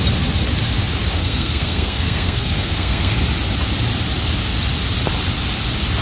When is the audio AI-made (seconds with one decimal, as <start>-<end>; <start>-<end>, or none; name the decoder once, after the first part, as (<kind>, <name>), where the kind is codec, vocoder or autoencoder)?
1.0-3.1 (codec, SNAC)